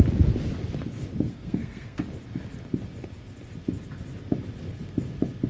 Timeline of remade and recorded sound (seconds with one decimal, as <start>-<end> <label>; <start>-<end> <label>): 0.0-1.3 recorded; 1.3-2.0 remade; 2.0-5.5 recorded